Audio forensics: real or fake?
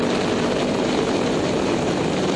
real